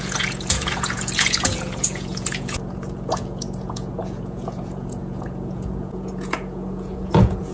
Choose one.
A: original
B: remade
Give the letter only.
B